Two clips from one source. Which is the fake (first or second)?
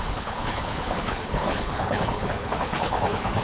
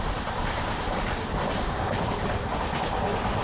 first